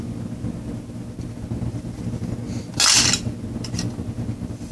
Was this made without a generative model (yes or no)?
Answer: yes